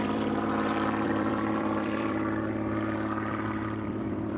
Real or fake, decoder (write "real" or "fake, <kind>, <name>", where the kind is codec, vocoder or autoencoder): fake, vocoder, BigVGAN v2